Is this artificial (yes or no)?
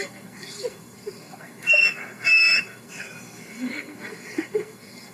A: yes